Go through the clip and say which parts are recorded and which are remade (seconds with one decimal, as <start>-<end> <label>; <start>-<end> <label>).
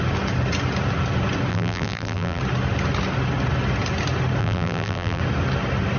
0.0-1.5 recorded; 1.5-2.4 remade; 2.4-4.4 recorded; 4.4-5.2 remade; 5.2-6.0 recorded